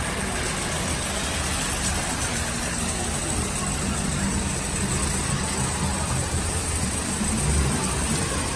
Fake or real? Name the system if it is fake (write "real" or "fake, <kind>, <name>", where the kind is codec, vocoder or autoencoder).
real